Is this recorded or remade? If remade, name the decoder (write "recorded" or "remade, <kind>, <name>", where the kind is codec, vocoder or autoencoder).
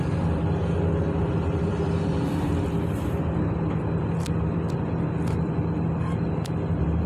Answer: recorded